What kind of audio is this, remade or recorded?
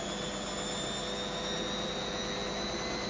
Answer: recorded